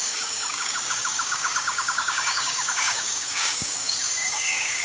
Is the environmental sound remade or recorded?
remade